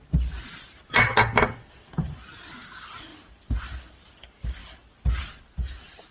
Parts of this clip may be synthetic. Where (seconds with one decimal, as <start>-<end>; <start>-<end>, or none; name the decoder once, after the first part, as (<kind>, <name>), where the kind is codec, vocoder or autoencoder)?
none